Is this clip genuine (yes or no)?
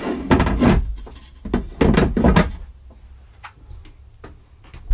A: yes